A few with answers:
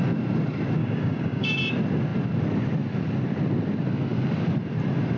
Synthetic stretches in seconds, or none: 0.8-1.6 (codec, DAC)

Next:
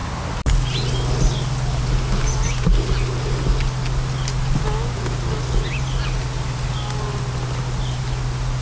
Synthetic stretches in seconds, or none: none